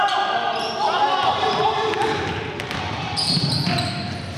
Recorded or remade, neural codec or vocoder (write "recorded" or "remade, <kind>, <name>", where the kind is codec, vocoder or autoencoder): recorded